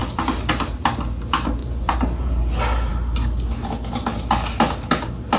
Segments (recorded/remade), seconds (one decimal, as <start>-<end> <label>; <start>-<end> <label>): 0.0-1.6 recorded; 1.6-2.4 remade; 2.4-5.4 recorded